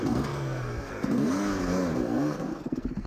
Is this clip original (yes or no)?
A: no